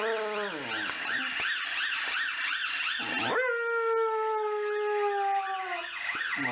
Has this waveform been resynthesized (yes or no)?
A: no